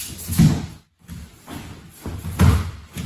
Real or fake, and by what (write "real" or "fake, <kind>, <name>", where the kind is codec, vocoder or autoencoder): real